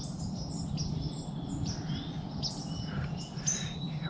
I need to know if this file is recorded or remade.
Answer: recorded